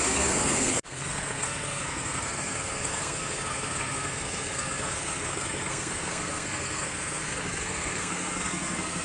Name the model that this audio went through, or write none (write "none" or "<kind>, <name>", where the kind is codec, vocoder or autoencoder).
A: codec, SNAC